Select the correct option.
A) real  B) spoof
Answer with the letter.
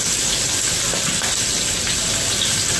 A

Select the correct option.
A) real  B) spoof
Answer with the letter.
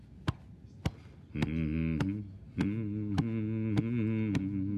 A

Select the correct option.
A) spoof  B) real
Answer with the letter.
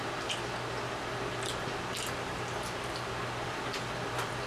B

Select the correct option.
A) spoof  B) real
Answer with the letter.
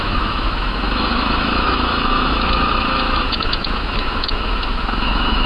A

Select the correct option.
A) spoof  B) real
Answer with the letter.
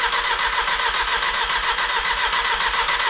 B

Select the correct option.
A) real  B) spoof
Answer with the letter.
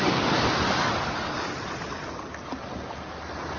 A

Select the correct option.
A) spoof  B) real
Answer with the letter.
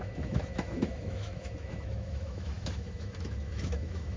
A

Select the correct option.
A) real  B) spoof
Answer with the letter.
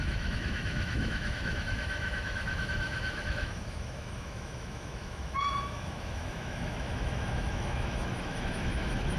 B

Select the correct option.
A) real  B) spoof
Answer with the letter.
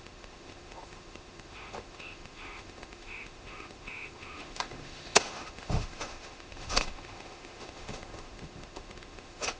B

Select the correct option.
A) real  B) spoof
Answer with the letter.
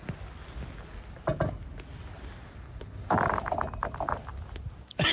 A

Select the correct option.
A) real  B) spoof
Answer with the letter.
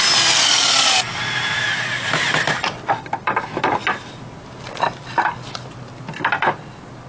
A